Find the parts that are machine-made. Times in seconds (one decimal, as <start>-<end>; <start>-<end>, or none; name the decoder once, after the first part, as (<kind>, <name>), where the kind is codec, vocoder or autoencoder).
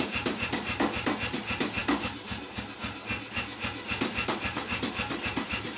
none